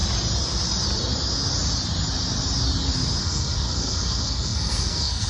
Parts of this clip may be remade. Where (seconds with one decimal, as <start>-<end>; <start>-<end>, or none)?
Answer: 3.2-5.3